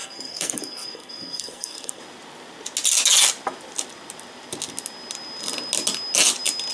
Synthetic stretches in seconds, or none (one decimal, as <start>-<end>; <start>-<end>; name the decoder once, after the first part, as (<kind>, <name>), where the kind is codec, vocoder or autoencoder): 0.0-2.0 (codec, SNAC)